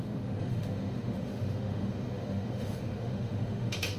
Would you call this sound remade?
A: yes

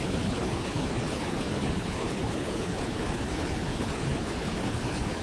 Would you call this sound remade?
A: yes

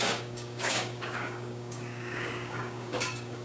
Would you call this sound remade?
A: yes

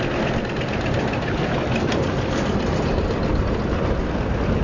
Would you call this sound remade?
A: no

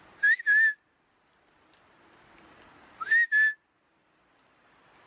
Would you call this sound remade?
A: no